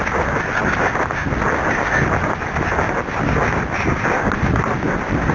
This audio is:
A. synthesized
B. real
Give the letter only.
B